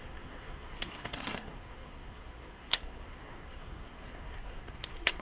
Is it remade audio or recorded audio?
remade